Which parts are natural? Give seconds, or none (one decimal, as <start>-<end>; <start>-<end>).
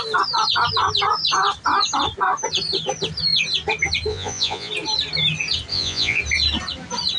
0.0-4.1; 4.7-5.7; 6.2-7.2